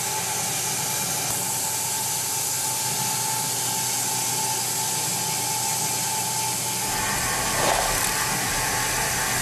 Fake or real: real